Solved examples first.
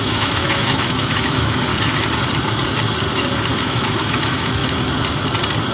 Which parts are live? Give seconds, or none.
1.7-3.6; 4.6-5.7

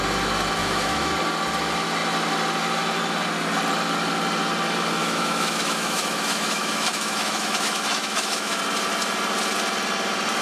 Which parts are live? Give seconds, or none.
0.0-0.6; 1.1-5.0; 8.6-10.4

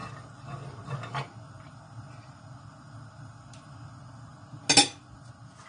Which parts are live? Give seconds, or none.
0.0-5.7

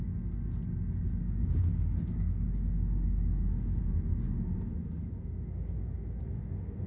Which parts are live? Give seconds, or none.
0.0-1.2; 3.8-4.2